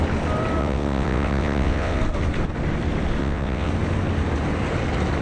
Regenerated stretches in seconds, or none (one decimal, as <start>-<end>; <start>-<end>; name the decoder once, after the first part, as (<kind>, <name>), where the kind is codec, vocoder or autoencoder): 0.6-2.0 (vocoder, WaveNeXt); 3.2-3.7